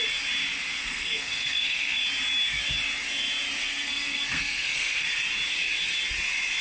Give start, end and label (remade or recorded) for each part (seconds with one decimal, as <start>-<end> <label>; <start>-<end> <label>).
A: 0.0-0.8 recorded; 0.8-2.0 remade; 2.0-3.6 recorded; 3.6-5.1 remade; 5.1-6.6 recorded